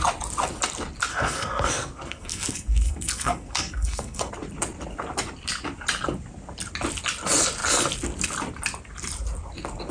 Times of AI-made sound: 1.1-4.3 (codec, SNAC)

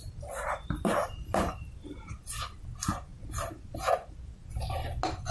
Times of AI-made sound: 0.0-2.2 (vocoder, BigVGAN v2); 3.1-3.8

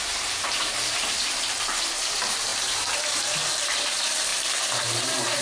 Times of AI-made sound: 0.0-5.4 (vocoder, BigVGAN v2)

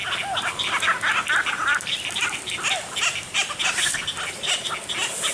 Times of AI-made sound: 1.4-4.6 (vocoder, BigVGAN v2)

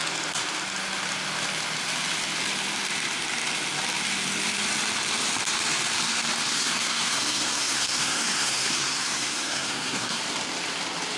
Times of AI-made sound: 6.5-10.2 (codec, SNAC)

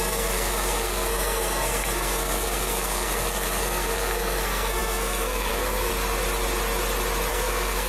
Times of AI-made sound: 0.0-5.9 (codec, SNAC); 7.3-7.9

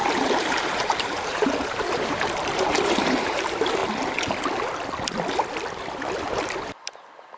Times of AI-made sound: 0.0-3.8 (vocoder, BigVGAN v2)

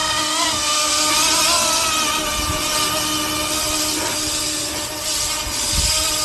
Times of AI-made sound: 0.0-1.1 (codec, SNAC)